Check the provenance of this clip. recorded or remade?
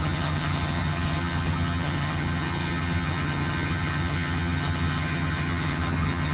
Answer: remade